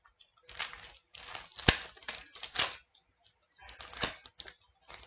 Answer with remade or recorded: recorded